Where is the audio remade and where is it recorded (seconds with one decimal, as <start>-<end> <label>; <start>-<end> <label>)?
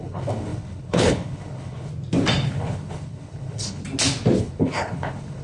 0.0-1.9 remade; 1.9-2.5 recorded; 2.5-3.8 remade; 3.8-4.4 recorded; 4.4-5.4 remade